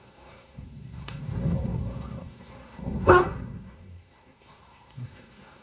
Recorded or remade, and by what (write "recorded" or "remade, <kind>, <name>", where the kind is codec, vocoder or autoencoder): remade, codec, SNAC